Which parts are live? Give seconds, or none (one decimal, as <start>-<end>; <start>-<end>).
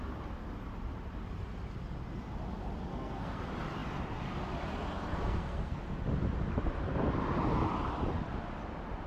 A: 0.0-2.9; 3.4-5.1; 5.8-9.1